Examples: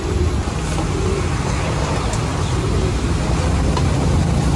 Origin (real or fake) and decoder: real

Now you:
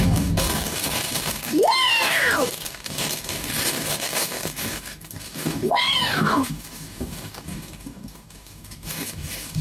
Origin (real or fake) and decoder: fake, codec, DAC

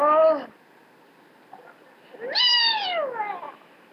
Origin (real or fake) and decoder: real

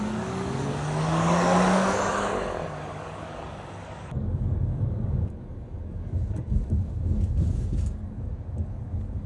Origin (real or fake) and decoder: fake, codec, DAC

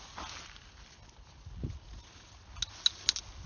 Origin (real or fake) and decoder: real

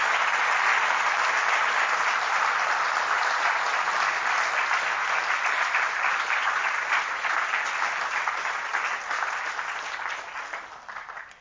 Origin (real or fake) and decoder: fake, vocoder, BigVGAN v2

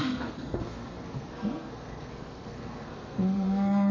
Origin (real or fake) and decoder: fake, codec, SNAC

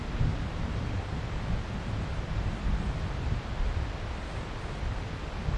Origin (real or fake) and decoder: real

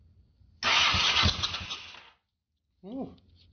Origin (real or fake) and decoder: real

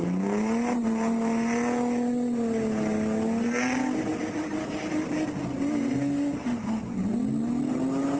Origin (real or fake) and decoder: real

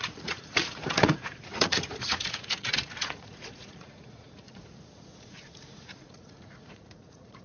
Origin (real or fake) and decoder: fake, vocoder, Vocos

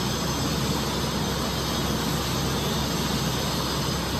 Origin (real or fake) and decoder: real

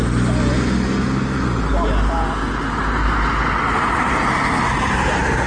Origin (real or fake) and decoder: real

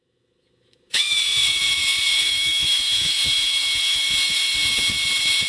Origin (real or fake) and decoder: fake, autoencoder, DAC-VAE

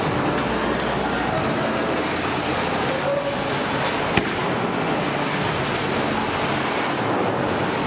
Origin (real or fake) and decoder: real